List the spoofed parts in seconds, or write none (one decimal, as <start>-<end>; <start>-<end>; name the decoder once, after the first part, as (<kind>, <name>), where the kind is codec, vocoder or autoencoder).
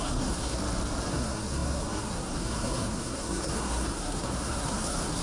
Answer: 0.0-0.6 (codec, SNAC); 1.1-5.2